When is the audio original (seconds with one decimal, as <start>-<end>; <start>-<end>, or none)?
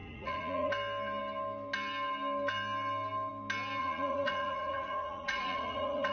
0.7-3.8